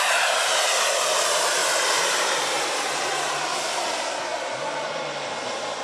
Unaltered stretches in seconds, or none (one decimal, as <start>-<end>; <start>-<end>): 0.0-5.8